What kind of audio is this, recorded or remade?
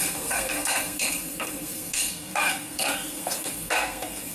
remade